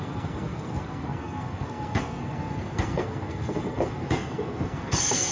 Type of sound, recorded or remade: remade